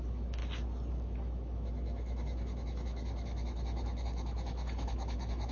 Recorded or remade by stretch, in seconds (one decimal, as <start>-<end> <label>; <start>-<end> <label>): 0.0-0.4 remade; 0.4-0.9 recorded; 0.9-5.5 remade